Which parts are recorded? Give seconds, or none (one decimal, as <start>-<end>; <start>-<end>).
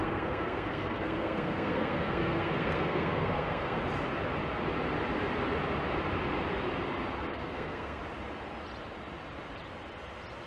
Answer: 3.8-7.3; 8.0-10.5